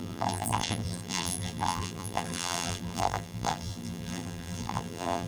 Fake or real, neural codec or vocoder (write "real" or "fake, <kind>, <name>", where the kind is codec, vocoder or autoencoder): fake, vocoder, BigVGAN v2